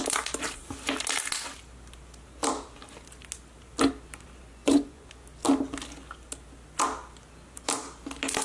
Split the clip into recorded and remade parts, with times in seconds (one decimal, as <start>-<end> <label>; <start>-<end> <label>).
0.0-4.5 recorded; 4.5-5.1 remade; 5.1-8.4 recorded